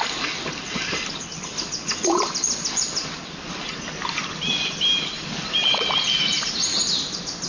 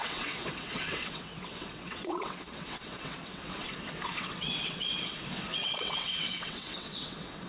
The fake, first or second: second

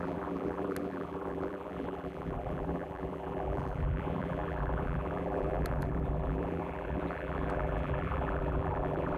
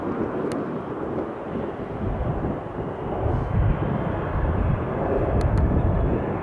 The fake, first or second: first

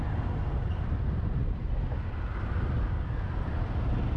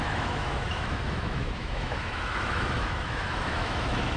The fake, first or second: second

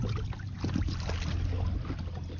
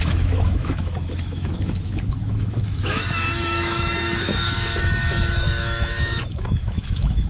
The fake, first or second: second